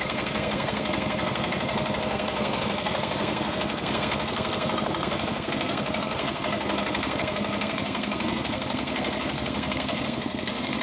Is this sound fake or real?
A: fake